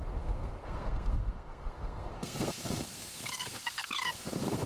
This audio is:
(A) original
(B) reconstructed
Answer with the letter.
B